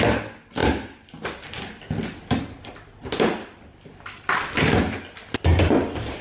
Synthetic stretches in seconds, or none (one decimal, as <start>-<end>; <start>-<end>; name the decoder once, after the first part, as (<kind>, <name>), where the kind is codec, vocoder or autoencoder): none